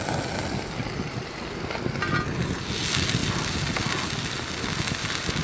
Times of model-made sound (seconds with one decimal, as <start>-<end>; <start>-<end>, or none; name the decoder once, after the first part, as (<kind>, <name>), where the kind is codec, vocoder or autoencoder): none